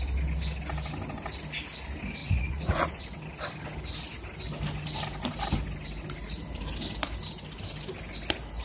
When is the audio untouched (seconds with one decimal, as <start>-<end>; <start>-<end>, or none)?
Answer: 0.0-2.2; 3.0-8.6